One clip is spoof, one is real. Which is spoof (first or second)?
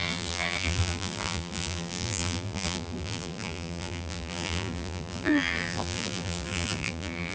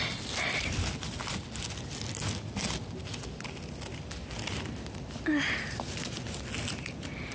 first